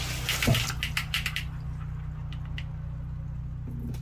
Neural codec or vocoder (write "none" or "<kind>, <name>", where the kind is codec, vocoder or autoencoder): none